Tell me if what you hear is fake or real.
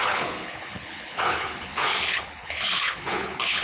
fake